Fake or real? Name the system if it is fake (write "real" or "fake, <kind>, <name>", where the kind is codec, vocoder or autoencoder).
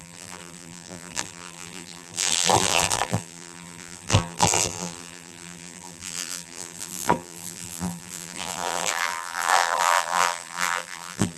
fake, vocoder, BigVGAN v2